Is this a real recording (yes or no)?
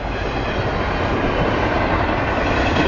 no